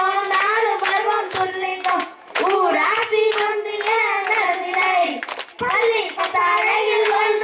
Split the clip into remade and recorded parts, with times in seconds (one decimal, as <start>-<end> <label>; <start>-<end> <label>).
0.0-5.0 remade; 5.0-6.2 recorded; 6.2-7.4 remade